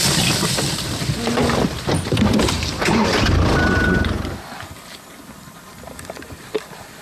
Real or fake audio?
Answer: real